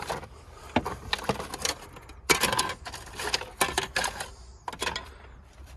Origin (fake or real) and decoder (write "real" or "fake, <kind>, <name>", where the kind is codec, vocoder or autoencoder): real